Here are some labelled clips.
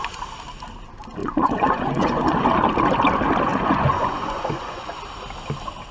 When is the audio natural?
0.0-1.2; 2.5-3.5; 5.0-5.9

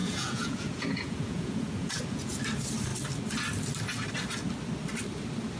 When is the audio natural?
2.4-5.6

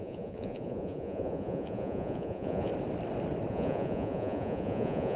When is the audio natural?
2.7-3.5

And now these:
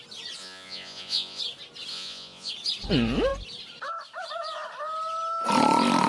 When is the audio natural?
0.0-0.4; 1.4-1.9; 2.5-6.1